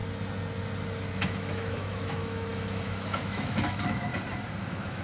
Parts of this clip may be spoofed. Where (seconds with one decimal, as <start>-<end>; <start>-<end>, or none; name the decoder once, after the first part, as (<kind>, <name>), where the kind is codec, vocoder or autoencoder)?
1.2-4.1 (autoencoder, DAC-VAE); 4.6-5.0